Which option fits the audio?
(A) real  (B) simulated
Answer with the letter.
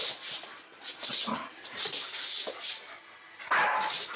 A